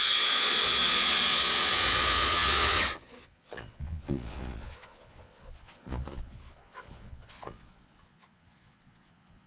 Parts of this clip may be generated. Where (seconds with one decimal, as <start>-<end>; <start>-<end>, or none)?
0.0-9.5